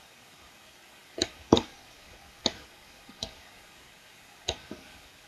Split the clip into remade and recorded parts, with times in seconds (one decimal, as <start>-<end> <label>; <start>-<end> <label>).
0.0-5.3 remade